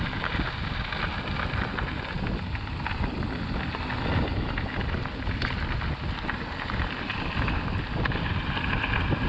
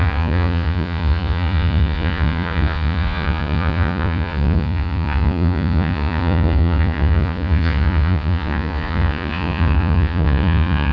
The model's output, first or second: second